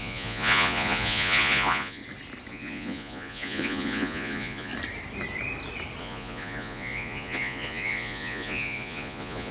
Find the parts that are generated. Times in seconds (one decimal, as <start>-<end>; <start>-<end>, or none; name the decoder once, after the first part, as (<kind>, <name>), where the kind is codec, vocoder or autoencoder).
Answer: 0.0-2.0 (vocoder, Vocos); 2.5-4.7; 6.0-9.5